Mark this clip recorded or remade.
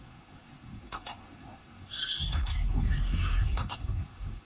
remade